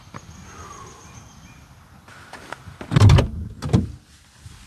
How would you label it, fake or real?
real